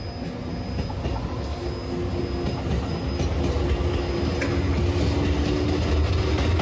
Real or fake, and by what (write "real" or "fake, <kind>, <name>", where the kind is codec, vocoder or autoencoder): real